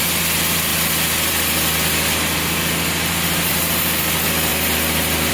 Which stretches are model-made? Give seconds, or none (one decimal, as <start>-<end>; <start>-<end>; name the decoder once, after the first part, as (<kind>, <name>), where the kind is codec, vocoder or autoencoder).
none